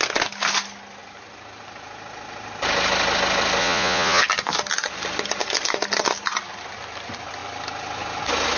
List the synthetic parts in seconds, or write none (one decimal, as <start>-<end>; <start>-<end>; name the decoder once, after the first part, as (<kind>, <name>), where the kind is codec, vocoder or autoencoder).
3.6-4.2 (vocoder, Vocos)